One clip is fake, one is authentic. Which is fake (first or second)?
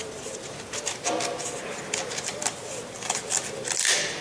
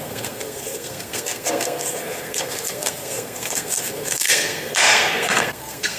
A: second